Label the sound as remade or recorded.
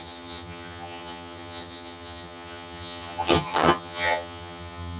remade